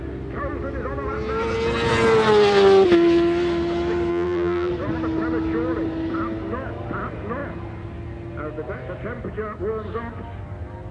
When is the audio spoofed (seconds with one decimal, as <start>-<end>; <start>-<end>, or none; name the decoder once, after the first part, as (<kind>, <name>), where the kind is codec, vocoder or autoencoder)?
4.1-4.7 (vocoder, BigVGAN v2)